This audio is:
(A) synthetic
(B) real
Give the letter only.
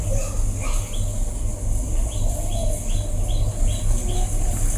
B